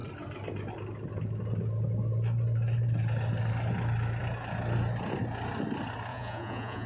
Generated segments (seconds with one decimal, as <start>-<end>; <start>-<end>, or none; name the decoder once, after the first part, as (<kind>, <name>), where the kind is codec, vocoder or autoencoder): 6.1-6.9 (vocoder, Vocos)